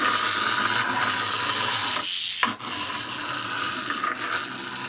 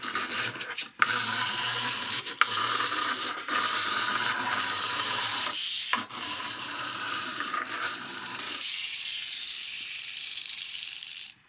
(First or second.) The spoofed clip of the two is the second